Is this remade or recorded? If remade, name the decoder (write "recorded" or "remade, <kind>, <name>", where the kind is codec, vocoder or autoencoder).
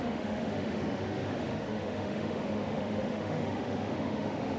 remade, autoencoder, DAC-VAE